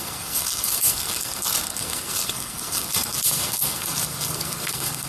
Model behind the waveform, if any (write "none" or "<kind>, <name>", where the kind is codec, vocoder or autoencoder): codec, SNAC